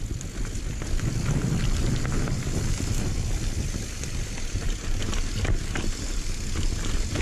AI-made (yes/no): no